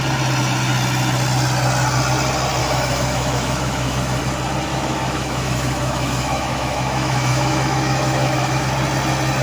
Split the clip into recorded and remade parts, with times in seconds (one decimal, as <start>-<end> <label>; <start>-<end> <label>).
0.0-2.6 recorded; 2.6-4.2 remade; 4.2-4.7 recorded; 4.7-8.7 remade; 8.7-9.4 recorded